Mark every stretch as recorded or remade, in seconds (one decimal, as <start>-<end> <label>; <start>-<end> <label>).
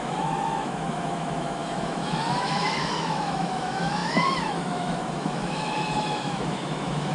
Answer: 0.0-7.1 remade